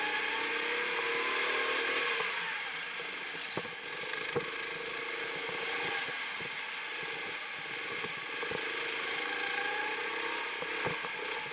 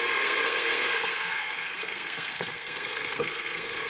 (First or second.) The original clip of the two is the first